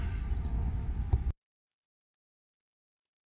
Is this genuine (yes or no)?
yes